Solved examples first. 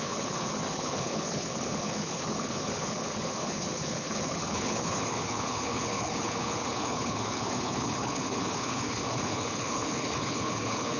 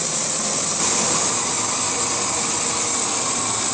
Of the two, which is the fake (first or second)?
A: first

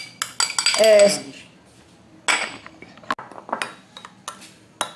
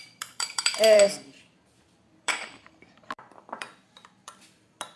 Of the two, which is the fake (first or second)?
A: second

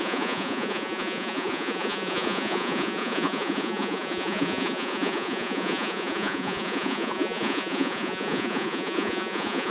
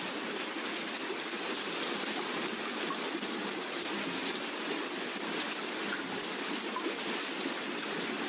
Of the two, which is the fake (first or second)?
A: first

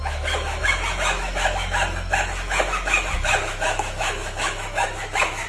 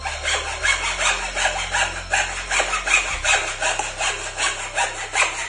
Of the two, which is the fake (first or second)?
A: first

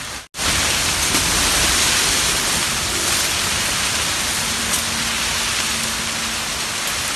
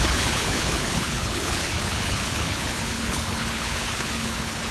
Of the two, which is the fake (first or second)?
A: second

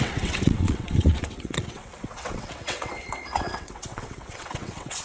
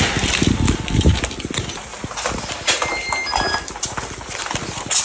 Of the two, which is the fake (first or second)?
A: first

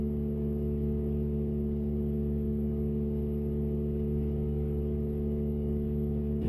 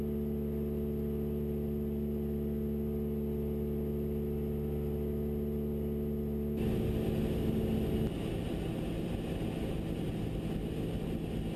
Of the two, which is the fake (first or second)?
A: first